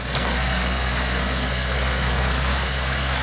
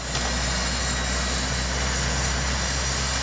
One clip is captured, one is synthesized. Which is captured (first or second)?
second